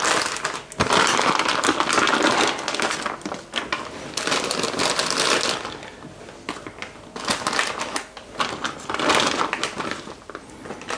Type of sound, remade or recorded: recorded